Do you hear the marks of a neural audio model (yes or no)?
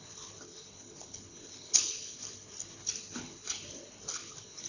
yes